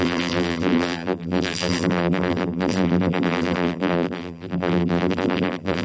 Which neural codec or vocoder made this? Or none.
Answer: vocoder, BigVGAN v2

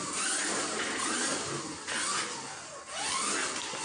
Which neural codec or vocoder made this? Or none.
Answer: none